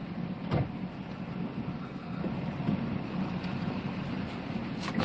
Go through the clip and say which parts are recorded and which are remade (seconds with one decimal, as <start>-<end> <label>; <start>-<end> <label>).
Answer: 0.0-1.8 recorded; 1.8-2.2 remade; 2.2-5.0 recorded